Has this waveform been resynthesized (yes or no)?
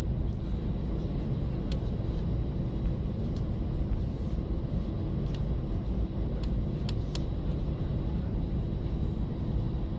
no